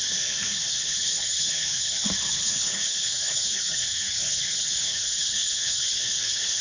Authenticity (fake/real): fake